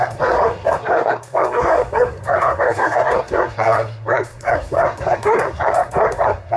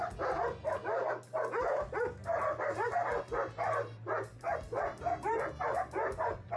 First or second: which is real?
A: second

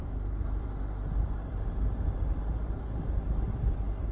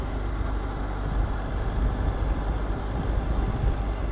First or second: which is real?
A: second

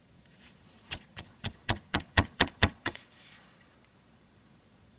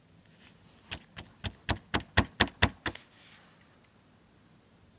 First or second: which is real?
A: second